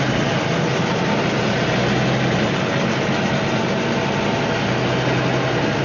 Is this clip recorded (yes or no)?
yes